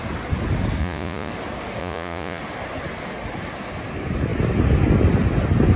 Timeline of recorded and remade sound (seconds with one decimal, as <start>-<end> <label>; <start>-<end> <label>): 0.0-0.8 recorded; 0.8-1.3 remade; 1.3-1.8 recorded; 1.8-2.4 remade; 2.4-5.8 recorded

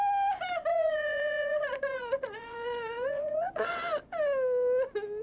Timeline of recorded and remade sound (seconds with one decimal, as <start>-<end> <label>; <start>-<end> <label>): 0.0-0.7 recorded; 0.7-3.7 remade; 3.7-5.2 recorded

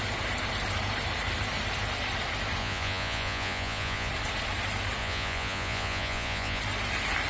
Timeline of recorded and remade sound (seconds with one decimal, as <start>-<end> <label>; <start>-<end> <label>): 0.0-2.6 recorded; 2.6-4.1 remade; 4.1-5.0 recorded; 5.0-6.6 remade; 6.6-7.3 recorded

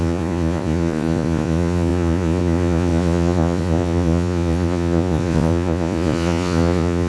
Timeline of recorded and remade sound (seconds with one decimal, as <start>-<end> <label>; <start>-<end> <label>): 0.0-7.1 remade

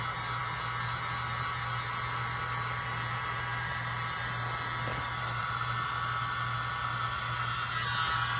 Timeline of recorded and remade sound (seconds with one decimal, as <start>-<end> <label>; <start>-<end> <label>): 0.0-8.4 recorded